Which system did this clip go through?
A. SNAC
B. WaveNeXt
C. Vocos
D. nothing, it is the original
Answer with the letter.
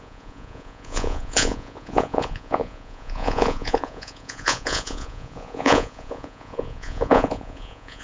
C